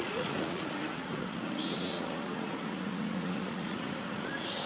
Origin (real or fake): fake